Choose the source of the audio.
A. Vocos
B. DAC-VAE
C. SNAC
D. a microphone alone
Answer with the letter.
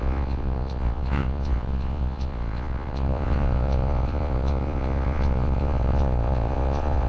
A